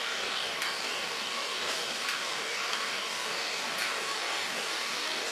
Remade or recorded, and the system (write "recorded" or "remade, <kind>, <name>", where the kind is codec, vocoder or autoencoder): remade, codec, DAC